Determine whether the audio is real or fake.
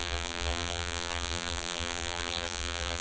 fake